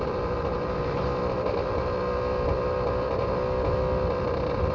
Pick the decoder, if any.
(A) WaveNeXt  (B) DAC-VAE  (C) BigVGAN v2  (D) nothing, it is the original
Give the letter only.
C